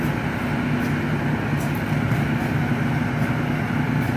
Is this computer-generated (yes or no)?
no